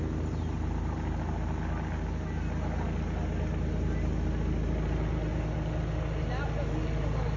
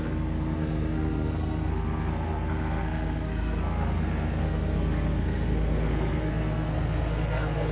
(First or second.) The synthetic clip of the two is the second